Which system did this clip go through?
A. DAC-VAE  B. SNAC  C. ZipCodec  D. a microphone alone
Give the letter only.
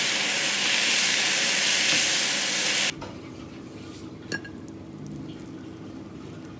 D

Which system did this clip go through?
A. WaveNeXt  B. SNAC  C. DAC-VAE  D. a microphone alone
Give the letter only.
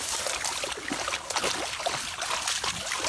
D